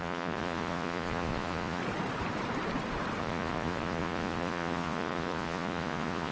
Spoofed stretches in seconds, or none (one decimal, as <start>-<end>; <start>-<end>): 0.0-1.8; 3.2-6.3